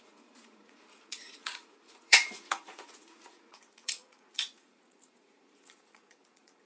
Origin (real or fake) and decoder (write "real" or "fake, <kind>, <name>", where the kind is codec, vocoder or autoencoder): fake, vocoder, Vocos